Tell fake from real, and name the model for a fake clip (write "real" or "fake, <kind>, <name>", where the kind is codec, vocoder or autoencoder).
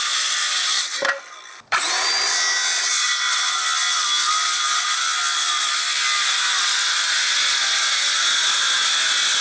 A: real